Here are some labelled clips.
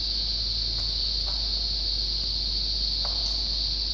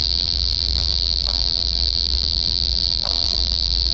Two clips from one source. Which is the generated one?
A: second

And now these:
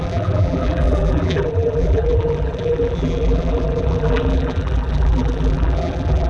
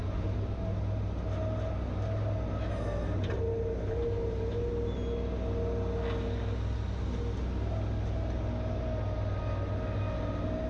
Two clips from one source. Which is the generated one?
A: first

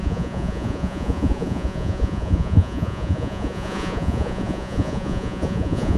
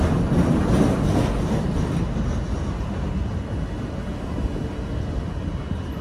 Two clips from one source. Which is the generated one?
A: first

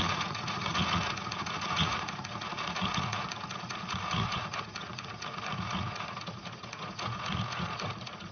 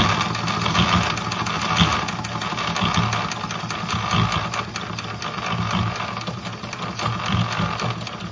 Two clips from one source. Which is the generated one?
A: first